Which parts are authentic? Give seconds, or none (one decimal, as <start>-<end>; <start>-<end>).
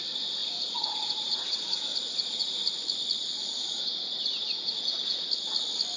0.0-0.4; 2.6-3.2; 5.3-6.0